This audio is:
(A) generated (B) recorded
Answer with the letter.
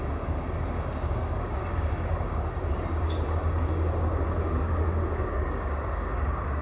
A